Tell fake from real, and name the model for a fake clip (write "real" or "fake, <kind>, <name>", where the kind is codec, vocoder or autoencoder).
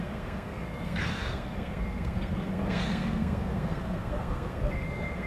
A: fake, codec, SNAC